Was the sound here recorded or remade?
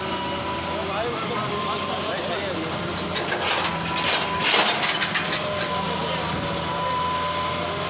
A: recorded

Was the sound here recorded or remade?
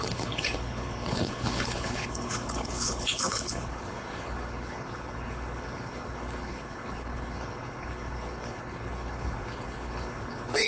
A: remade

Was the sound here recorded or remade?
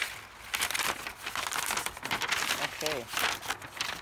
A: recorded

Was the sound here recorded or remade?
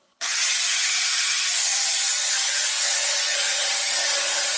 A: remade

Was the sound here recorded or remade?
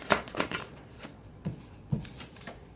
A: remade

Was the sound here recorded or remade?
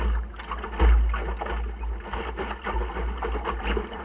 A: recorded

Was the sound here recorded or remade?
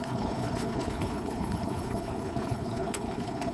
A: remade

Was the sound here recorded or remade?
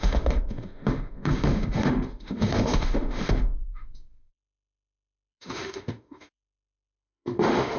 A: remade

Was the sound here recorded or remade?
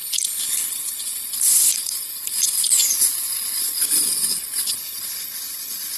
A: remade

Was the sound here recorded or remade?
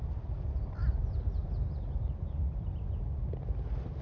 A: recorded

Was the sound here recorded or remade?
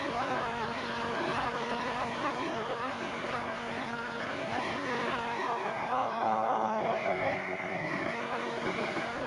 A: remade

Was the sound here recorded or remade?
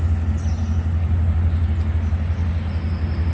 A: recorded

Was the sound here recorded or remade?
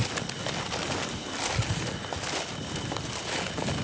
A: recorded